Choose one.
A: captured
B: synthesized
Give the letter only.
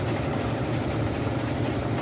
B